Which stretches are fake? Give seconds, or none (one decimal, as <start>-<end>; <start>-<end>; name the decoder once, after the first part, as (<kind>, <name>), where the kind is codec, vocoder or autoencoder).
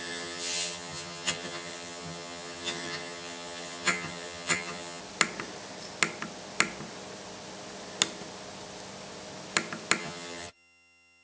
0.0-5.0 (vocoder, HiFi-GAN); 10.0-11.2